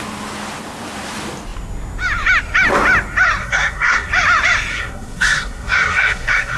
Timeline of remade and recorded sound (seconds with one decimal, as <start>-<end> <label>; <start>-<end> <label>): 0.0-3.4 recorded; 3.4-4.1 remade; 4.1-4.7 recorded; 4.7-6.6 remade